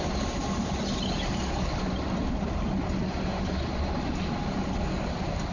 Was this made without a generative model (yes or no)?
yes